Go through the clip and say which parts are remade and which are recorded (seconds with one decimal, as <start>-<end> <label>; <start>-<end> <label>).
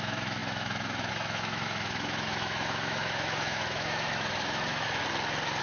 0.0-5.0 remade; 5.0-5.6 recorded